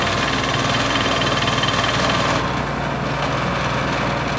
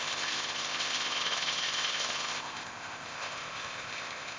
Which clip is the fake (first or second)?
second